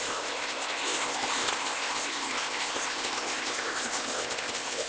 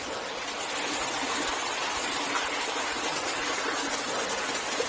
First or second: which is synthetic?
first